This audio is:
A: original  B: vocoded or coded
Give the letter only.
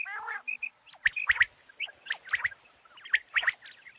A